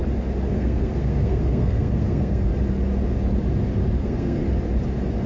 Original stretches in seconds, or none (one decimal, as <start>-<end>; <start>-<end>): 0.0-0.5; 2.5-3.9; 4.4-5.3

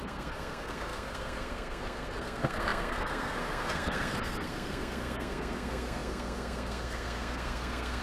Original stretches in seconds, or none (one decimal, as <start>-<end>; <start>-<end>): none